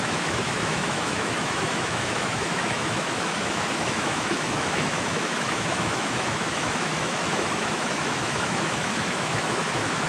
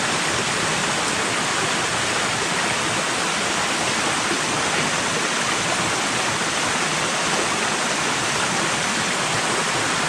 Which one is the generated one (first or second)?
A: first